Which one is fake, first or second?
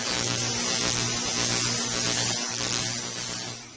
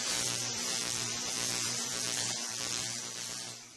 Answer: second